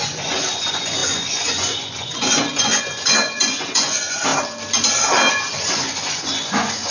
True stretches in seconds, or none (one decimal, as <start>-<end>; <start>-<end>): 4.3-5.3